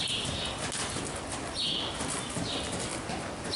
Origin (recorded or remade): recorded